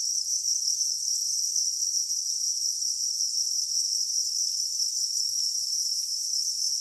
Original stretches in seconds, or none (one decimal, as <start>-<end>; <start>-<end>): 0.0-6.8